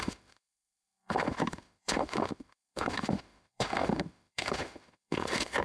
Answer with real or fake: fake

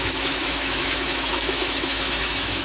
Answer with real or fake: fake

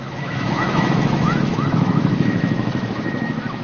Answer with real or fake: fake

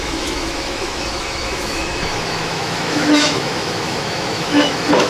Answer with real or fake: fake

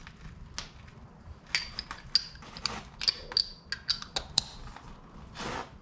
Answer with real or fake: real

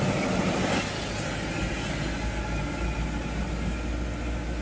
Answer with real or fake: real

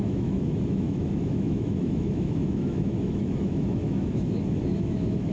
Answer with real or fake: fake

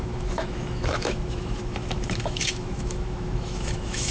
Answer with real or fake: fake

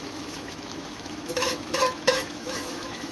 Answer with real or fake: fake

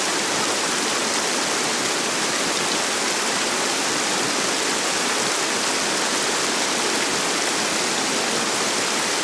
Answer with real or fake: real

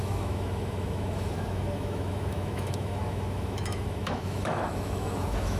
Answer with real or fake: fake